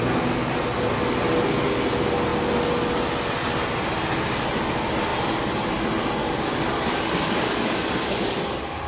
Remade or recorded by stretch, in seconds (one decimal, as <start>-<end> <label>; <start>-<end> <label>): 0.0-6.2 recorded; 6.2-8.9 remade